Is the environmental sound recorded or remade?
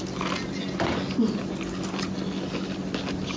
recorded